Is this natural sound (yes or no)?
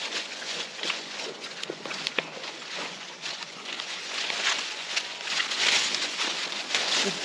no